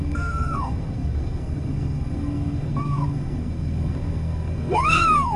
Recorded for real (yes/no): no